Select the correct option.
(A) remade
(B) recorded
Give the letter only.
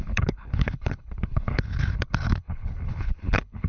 A